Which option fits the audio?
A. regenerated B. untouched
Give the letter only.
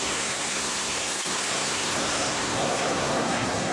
A